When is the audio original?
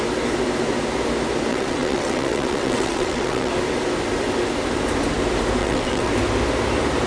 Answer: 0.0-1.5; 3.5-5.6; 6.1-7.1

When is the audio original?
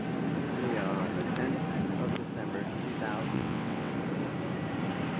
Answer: 0.0-3.3; 3.9-5.2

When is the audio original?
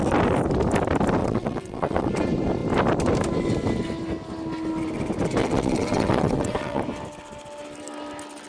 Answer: 0.0-1.2; 2.1-5.4; 6.8-8.5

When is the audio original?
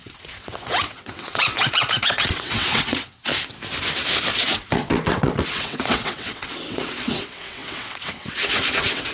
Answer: 3.3-4.3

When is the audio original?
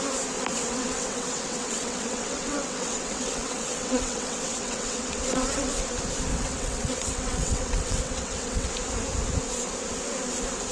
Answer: 0.0-0.5; 5.7-6.3; 8.7-10.7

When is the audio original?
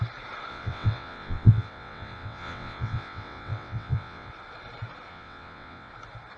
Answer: 0.0-0.5; 4.3-5.1; 5.9-6.4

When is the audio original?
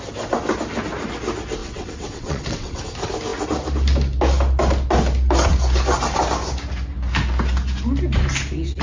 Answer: 0.0-1.6; 2.8-8.8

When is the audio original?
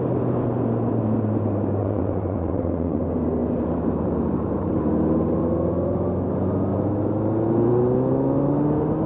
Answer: 0.0-1.8; 3.0-9.1